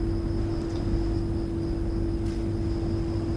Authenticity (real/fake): real